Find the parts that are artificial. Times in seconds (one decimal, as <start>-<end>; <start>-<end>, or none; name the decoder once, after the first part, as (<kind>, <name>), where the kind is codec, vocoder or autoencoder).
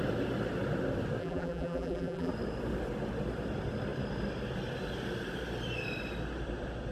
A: 1.2-2.3 (vocoder, BigVGAN v2)